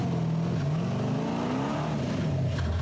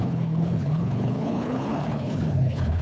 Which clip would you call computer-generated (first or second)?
second